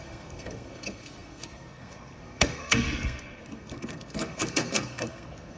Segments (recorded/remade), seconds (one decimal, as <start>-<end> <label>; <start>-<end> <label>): 0.0-5.6 remade